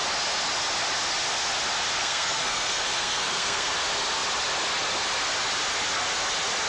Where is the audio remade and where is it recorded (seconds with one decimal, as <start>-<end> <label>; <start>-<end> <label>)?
0.0-2.0 recorded; 2.0-3.7 remade; 3.7-6.7 recorded